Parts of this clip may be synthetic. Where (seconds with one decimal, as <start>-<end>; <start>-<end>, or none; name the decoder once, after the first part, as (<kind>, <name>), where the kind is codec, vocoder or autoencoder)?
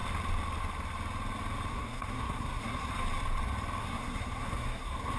1.7-2.9 (codec, SNAC); 3.8-5.2